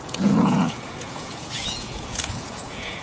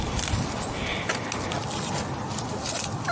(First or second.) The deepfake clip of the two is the first